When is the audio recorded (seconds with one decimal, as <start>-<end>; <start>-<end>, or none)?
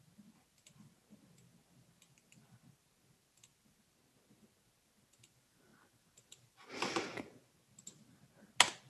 0.0-8.9